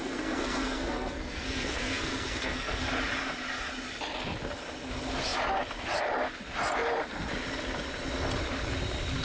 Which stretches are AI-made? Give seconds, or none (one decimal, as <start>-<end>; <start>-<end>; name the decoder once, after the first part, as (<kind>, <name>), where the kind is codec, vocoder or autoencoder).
0.0-2.8 (codec, SNAC)